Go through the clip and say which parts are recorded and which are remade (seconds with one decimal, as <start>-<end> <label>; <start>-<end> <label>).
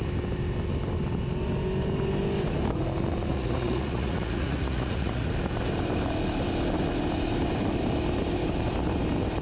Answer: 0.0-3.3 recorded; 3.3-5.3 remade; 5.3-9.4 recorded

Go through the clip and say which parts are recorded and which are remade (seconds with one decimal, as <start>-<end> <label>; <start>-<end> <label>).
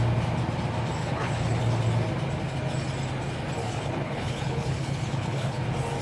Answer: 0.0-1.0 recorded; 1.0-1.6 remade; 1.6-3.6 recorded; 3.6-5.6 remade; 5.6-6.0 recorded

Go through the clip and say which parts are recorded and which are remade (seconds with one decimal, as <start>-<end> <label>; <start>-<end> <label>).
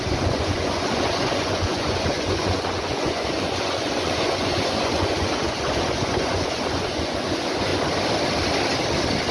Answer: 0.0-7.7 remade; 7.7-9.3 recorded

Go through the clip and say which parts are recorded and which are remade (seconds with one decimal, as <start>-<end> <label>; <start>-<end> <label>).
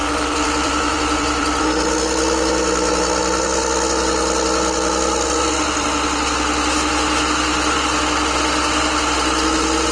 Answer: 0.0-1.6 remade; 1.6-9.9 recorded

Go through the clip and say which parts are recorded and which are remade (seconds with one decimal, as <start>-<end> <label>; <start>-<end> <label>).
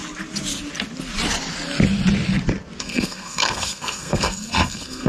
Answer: 0.0-2.8 recorded; 2.8-5.1 remade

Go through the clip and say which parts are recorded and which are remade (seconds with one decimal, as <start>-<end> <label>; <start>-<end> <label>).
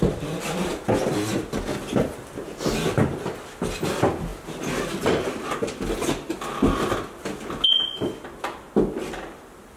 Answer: 0.0-9.8 recorded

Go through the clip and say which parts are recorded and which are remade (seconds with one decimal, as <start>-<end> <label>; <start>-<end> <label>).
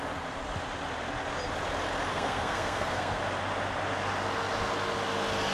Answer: 0.0-2.1 recorded; 2.1-3.2 remade; 3.2-5.5 recorded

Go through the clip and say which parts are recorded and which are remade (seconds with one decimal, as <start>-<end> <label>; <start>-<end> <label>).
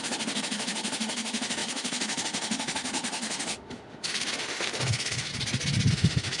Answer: 0.0-5.3 remade; 5.3-5.9 recorded; 5.9-6.4 remade